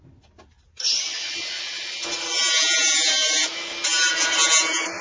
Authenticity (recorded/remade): recorded